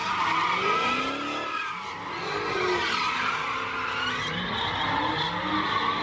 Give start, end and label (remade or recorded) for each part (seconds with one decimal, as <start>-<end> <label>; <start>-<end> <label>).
0.0-6.0 recorded